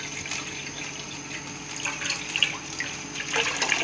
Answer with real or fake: real